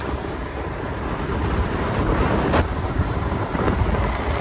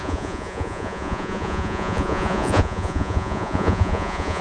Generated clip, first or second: second